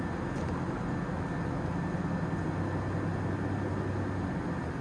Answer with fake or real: real